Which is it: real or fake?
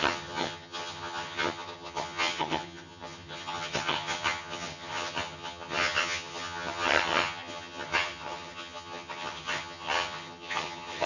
fake